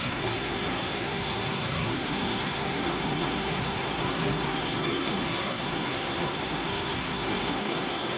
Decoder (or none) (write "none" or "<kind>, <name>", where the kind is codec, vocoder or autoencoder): codec, SNAC